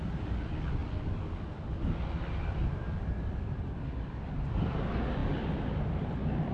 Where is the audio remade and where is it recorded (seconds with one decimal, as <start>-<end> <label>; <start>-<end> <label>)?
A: 0.0-6.5 recorded